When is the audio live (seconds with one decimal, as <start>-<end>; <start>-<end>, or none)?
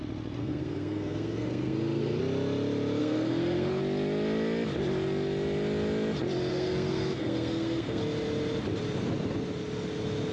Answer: 0.0-0.4; 2.2-3.0; 3.8-6.5; 8.0-10.3